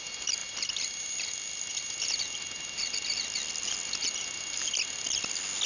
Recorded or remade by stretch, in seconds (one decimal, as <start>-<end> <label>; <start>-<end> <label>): 0.0-5.7 recorded

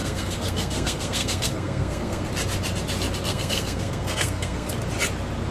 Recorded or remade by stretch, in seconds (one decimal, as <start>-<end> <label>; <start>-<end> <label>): 0.0-2.3 remade; 2.3-3.3 recorded; 3.3-4.7 remade; 4.7-5.5 recorded

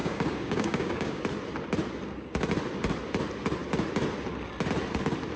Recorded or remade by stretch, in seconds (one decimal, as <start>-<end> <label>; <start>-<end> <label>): 0.0-1.2 remade; 1.2-5.4 recorded

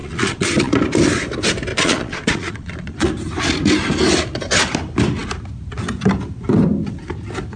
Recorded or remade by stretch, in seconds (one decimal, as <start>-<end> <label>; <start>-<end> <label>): 0.0-0.7 remade; 0.7-1.7 recorded; 1.7-3.1 remade; 3.1-7.6 recorded